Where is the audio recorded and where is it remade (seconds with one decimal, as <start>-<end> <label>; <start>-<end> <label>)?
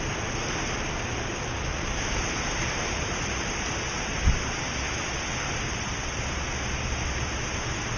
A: 0.0-1.7 recorded; 1.7-3.5 remade; 3.5-8.0 recorded